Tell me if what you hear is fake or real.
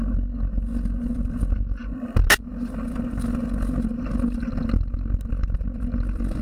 real